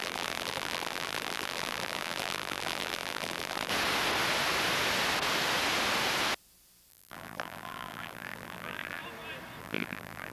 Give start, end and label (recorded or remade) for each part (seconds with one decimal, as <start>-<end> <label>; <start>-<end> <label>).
0.0-3.7 remade; 3.7-6.9 recorded; 6.9-9.0 remade; 9.0-9.6 recorded; 9.6-10.3 remade